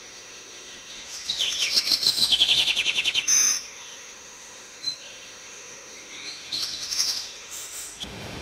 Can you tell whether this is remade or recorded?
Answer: remade